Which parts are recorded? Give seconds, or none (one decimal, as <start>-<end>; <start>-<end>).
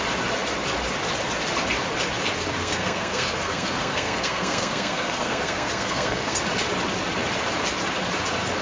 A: 0.0-2.6; 6.4-8.6